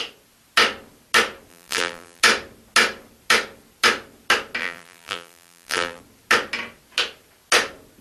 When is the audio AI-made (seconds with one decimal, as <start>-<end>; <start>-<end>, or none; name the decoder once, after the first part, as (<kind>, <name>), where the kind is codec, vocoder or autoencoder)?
1.5-2.2 (vocoder, BigVGAN v2); 4.6-6.0